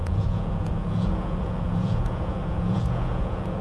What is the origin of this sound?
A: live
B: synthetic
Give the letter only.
B